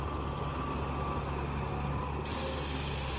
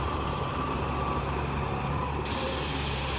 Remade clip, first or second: second